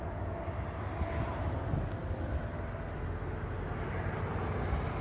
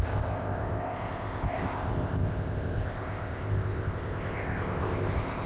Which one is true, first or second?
first